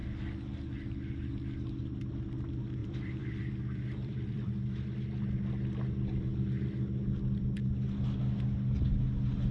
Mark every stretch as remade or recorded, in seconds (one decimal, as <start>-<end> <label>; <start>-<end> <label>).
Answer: 0.0-2.8 recorded; 2.8-4.5 remade; 4.5-9.5 recorded